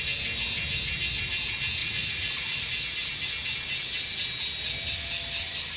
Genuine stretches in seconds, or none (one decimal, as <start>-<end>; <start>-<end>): 0.0-1.8; 2.7-5.8